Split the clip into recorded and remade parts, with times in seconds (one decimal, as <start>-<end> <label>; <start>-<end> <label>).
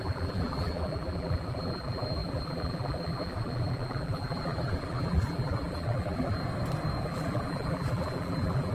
0.0-6.4 remade; 6.4-7.0 recorded; 7.0-8.7 remade